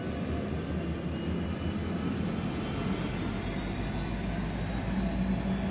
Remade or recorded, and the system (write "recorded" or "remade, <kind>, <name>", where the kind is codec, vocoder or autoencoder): recorded